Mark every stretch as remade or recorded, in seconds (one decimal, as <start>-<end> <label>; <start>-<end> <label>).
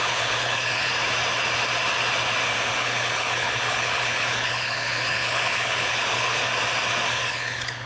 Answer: 0.0-0.9 remade; 0.9-2.7 recorded; 2.7-6.4 remade; 6.4-7.3 recorded; 7.3-7.9 remade